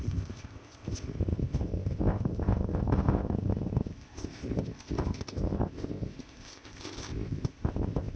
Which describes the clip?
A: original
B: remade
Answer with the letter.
B